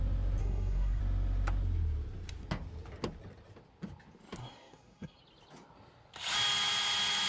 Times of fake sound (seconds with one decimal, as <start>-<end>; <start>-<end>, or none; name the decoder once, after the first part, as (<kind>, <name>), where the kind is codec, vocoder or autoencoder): 0.4-1.0 (codec, SNAC); 4.4-5.2